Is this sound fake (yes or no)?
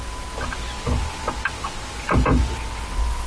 no